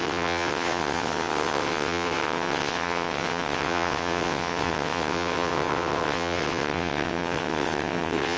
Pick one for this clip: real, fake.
fake